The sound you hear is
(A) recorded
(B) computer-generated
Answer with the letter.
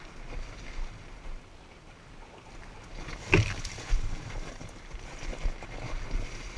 A